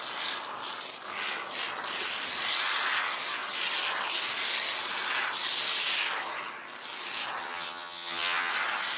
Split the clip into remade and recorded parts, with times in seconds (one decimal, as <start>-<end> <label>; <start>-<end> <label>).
0.0-7.4 recorded; 7.4-8.5 remade; 8.5-9.0 recorded